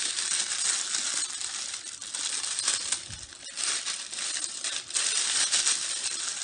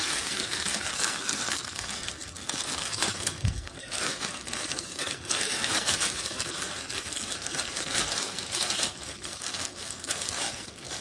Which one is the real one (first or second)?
first